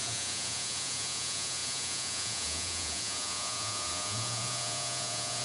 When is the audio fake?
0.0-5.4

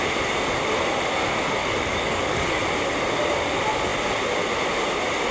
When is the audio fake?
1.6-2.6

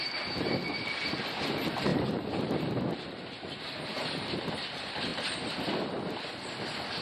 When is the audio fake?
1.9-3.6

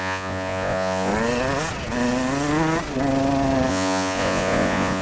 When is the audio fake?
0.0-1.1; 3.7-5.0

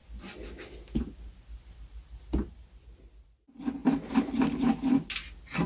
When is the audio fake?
none